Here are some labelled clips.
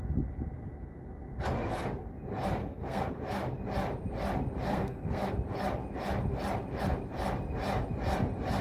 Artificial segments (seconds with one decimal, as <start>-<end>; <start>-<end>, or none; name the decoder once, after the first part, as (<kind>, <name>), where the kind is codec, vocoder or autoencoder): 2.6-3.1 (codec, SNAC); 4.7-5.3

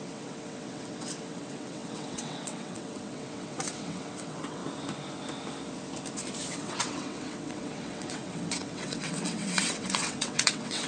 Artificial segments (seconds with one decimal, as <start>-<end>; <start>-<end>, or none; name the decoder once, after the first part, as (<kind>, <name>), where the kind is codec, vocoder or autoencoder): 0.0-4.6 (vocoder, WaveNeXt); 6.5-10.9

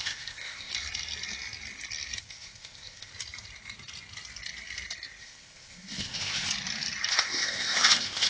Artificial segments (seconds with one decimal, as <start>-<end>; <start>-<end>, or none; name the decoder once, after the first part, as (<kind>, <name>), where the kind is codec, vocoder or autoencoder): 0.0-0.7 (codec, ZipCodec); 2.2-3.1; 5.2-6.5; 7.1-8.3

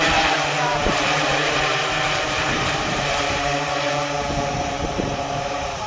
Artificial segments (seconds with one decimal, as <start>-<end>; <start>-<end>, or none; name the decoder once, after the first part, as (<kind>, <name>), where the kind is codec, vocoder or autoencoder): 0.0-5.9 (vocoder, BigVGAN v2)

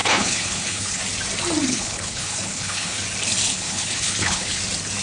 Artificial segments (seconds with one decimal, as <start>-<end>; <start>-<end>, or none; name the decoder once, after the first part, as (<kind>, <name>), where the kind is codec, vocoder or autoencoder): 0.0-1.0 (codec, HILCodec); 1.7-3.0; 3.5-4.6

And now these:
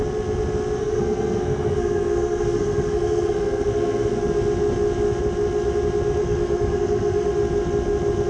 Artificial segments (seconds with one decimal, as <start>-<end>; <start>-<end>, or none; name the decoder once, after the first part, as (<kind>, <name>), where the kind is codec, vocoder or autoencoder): 0.8-4.2 (codec, SNAC); 6.2-7.3

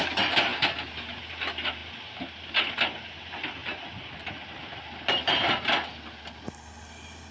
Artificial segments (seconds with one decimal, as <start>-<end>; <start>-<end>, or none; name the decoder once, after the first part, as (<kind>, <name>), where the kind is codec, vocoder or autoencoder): 1.8-2.5 (vocoder, BigVGAN v2)